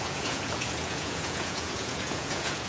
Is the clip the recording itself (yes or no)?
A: no